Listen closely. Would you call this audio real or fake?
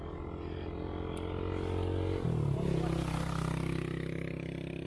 real